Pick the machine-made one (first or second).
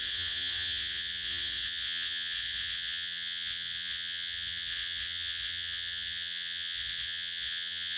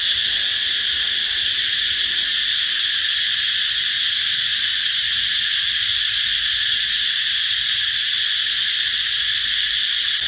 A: first